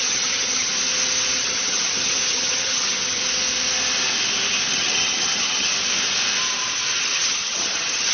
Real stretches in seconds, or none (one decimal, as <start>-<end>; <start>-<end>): 0.7-1.4; 3.2-4.6; 5.7-7.0